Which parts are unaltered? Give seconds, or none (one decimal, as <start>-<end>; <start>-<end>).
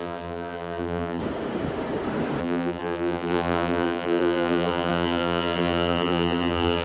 1.2-2.4